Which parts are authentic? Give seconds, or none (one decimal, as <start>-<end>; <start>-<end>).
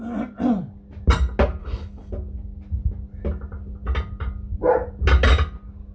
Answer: 0.0-1.6; 2.1-5.9